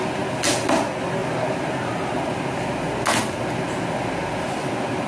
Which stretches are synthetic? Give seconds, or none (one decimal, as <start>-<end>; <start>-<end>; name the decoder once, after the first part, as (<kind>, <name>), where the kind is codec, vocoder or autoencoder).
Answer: none

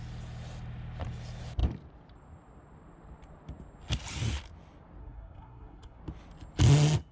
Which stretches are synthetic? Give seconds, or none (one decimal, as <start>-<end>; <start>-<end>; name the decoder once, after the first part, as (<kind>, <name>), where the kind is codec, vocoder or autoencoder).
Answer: 5.0-6.0 (codec, SNAC)